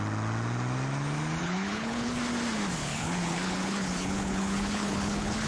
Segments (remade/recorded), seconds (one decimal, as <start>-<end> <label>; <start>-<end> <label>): 0.0-1.4 recorded; 1.4-2.2 remade; 2.2-2.8 recorded; 2.8-5.5 remade